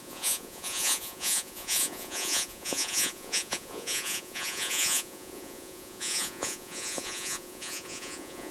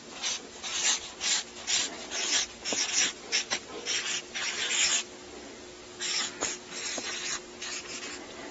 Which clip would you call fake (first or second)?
first